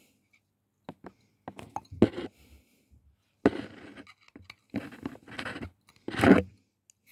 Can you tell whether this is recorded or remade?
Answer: recorded